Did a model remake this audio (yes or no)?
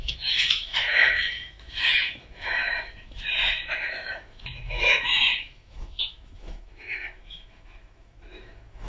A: yes